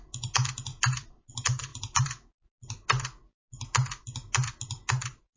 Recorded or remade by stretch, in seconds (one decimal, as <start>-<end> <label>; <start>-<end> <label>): 0.0-0.7 recorded; 0.7-1.2 remade; 1.2-1.7 recorded; 1.7-2.3 remade; 2.3-5.4 recorded